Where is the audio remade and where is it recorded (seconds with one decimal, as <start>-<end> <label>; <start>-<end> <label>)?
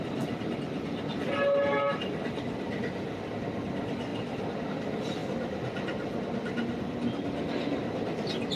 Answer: 0.0-8.6 recorded